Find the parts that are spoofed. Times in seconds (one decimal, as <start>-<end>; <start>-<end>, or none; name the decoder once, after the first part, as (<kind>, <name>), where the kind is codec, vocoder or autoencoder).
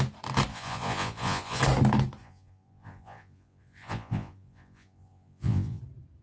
0.5-1.6 (vocoder, Vocos); 2.2-5.8